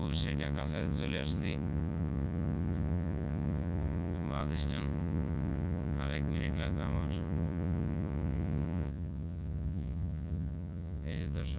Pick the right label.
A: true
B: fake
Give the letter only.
B